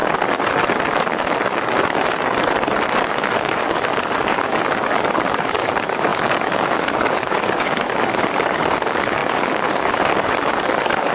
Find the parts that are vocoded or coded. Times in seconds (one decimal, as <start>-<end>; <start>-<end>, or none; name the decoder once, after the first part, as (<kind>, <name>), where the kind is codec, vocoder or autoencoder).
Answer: 3.1-11.1 (codec, DAC)

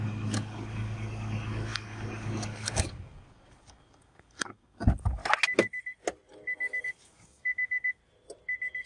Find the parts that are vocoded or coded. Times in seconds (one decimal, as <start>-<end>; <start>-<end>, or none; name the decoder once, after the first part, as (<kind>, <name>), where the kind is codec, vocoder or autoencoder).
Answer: 0.0-5.2 (codec, DAC); 6.8-8.0

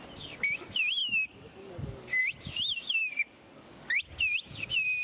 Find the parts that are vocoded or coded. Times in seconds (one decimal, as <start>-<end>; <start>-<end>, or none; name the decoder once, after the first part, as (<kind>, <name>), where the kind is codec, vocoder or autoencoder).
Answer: 1.0-2.2 (codec, DAC); 3.0-4.0

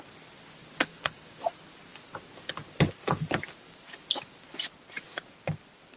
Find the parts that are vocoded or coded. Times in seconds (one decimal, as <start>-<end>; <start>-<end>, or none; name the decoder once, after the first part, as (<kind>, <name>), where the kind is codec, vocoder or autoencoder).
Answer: 0.9-1.4 (codec, DAC)